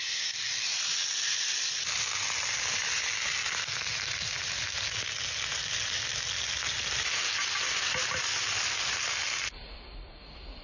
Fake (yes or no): no